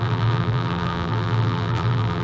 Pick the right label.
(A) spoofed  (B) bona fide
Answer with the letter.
A